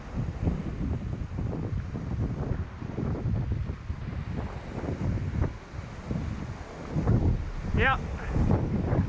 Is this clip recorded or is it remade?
recorded